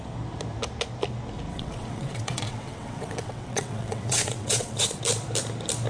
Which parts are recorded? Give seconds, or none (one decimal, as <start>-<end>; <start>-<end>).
0.0-1.5; 5.0-5.9